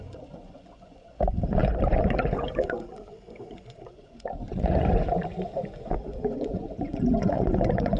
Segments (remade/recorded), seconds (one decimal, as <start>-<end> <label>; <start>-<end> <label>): 0.0-8.0 remade